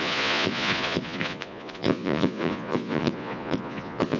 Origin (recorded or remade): remade